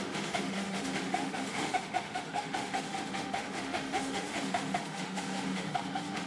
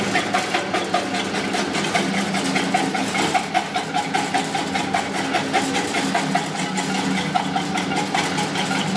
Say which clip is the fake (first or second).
first